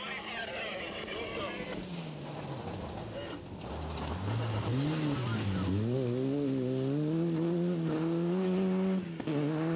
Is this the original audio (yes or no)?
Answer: yes